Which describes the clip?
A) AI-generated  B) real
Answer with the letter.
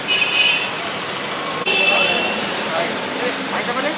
A